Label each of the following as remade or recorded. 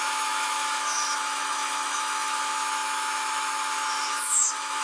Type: remade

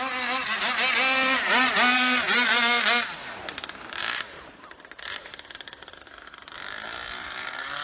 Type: recorded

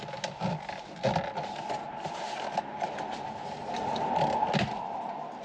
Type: recorded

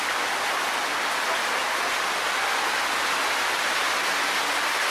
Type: recorded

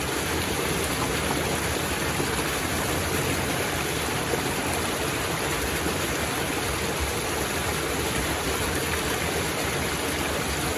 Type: recorded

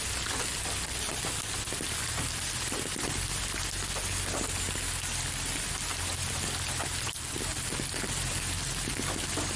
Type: recorded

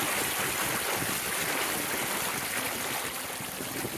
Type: recorded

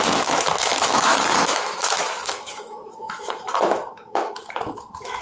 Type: remade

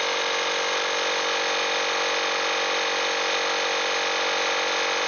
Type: recorded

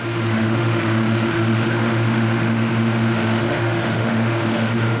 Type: remade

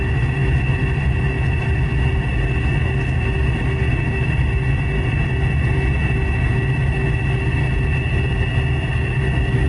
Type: recorded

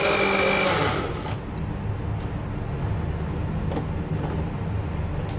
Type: recorded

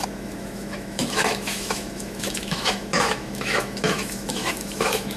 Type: remade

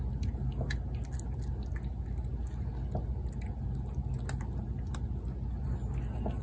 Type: recorded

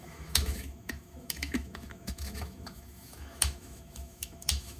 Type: remade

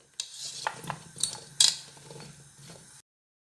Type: recorded